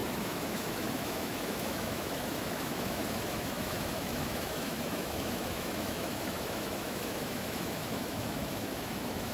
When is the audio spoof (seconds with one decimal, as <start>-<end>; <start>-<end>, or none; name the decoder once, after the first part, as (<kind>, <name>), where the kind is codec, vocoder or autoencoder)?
0.0-9.3 (autoencoder, DAC-VAE)